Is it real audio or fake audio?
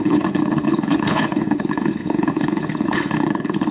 fake